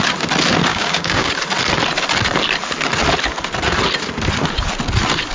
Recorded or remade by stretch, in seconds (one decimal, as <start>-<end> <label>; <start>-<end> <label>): 0.0-0.7 recorded; 0.7-1.3 remade; 1.3-5.3 recorded